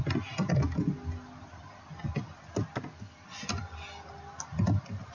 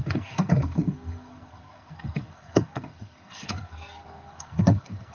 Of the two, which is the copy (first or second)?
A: second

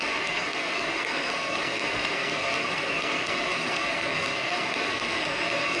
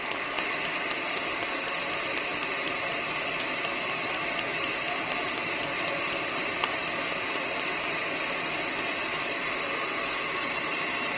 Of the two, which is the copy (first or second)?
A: first